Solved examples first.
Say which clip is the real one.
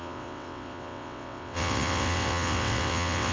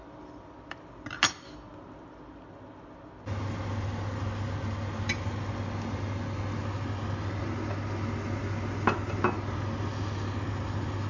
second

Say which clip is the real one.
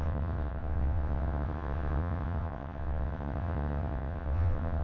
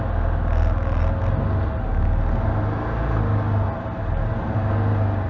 second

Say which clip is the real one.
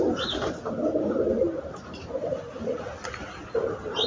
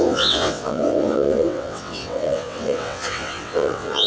first